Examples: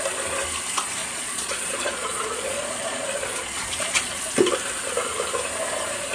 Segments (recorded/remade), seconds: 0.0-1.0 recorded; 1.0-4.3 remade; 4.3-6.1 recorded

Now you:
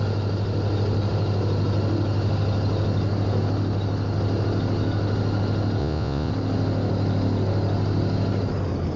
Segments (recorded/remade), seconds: 0.0-5.8 recorded; 5.8-6.3 remade; 6.3-9.0 recorded

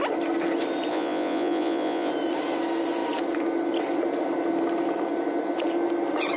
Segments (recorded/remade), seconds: 0.0-0.9 recorded; 0.9-2.1 remade; 2.1-6.4 recorded

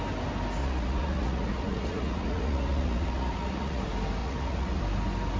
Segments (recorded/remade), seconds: 0.0-0.6 recorded; 0.6-3.8 remade; 3.8-4.2 recorded; 4.2-4.8 remade; 4.8-5.4 recorded

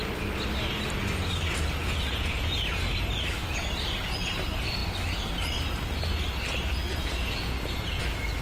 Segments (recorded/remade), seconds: 0.0-1.8 recorded; 1.8-3.0 remade; 3.0-6.9 recorded; 6.9-8.0 remade; 8.0-8.4 recorded

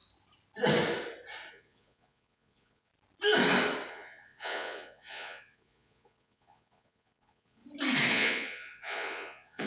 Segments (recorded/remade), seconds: 0.0-1.5 recorded; 1.5-2.9 remade; 2.9-3.9 recorded; 3.9-7.6 remade; 7.6-8.1 recorded; 8.1-9.7 remade